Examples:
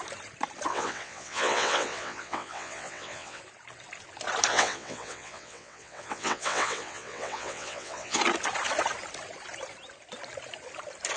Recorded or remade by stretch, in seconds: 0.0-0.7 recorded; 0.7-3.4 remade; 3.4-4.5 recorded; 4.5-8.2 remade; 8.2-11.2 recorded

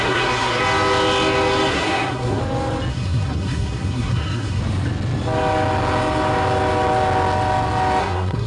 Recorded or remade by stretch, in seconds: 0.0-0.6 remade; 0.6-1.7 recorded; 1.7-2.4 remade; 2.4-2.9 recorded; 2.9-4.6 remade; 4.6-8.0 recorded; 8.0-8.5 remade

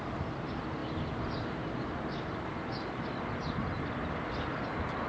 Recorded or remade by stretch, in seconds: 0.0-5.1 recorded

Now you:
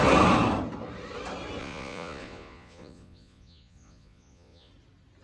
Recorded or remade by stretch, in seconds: 0.0-1.6 recorded; 1.6-4.7 remade; 4.7-5.2 recorded